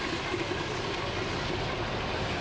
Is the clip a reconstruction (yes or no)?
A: no